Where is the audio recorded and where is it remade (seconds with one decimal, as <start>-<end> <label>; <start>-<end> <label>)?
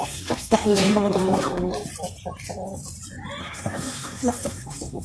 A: 0.0-1.7 remade; 1.7-3.4 recorded; 3.4-5.0 remade